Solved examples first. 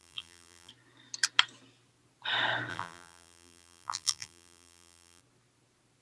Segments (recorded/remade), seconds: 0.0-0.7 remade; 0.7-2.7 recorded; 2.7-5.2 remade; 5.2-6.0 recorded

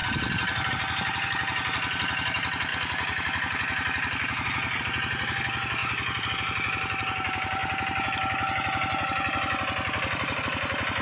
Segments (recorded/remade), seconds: 0.0-0.7 remade; 0.7-5.8 recorded; 5.8-6.3 remade; 6.3-11.0 recorded

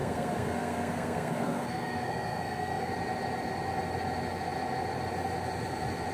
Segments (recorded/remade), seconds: 0.0-2.9 remade; 2.9-6.1 recorded

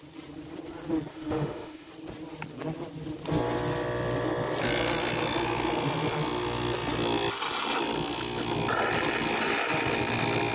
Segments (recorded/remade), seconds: 0.0-1.1 recorded; 1.1-1.9 remade; 1.9-10.5 recorded

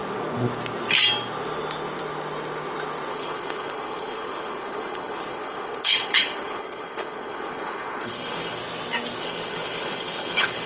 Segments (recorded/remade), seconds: 0.0-3.1 recorded; 3.1-8.6 remade; 8.6-9.2 recorded; 9.2-10.7 remade